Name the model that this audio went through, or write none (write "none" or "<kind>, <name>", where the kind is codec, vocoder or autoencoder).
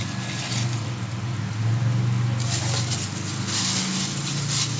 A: none